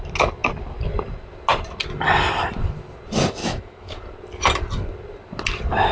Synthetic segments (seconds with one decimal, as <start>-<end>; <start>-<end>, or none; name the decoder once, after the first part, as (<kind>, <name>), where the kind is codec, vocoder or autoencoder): 3.4-4.0 (autoencoder, DAC-VAE)